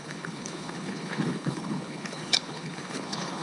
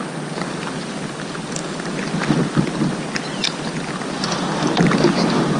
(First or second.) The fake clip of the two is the first